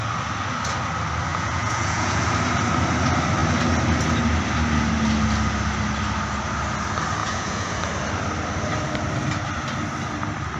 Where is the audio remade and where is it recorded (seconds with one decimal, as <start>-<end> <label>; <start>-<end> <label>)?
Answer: 0.0-1.3 recorded; 1.3-2.2 remade; 2.2-7.2 recorded; 7.2-7.8 remade; 7.8-10.6 recorded